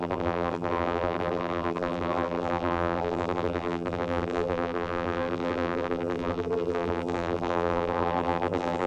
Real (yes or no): no